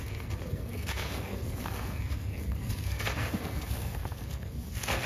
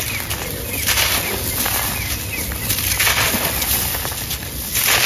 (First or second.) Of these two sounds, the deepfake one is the first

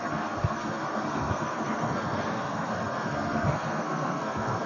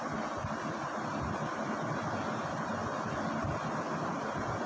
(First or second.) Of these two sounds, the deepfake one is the first